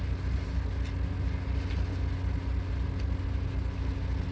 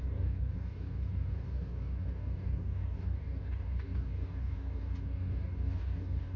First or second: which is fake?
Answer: second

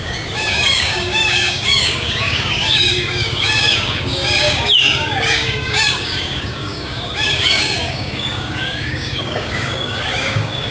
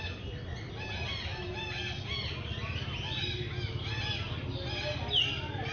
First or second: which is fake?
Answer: first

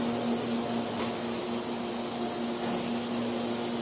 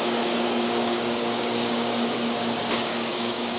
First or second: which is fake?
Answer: second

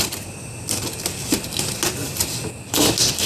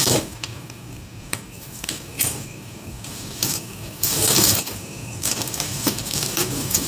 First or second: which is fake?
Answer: second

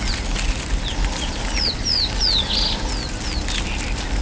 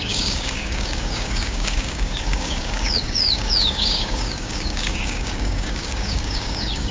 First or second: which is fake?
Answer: second